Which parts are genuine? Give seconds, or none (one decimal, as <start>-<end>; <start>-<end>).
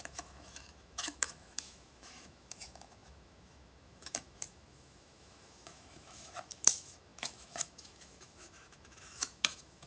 none